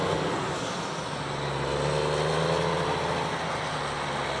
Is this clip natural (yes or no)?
yes